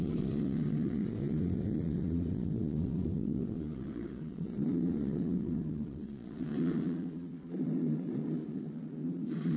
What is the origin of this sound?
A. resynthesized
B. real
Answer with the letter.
A